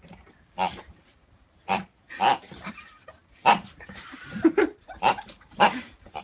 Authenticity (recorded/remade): remade